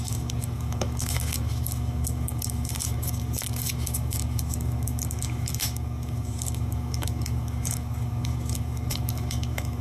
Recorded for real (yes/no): no